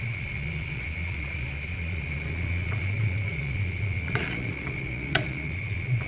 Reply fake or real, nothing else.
fake